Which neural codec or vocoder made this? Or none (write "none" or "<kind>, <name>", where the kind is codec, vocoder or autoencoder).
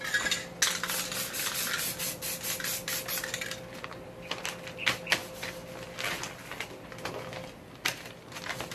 none